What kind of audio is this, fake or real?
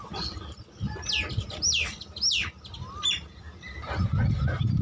real